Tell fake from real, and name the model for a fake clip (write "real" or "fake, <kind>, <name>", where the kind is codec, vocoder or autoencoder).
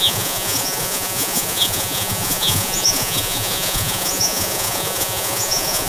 fake, vocoder, Vocos